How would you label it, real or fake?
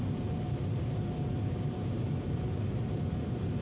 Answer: fake